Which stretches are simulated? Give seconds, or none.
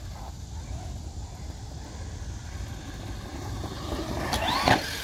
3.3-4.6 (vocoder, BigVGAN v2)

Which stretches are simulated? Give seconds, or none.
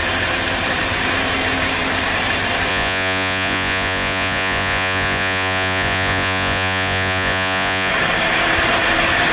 2.7-7.9 (vocoder, Vocos)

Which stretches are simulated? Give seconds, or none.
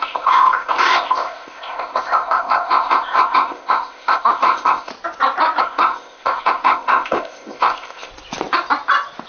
0.0-4.9 (codec, ZipCodec); 5.6-8.1